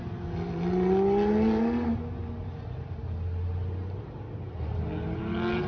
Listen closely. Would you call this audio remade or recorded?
recorded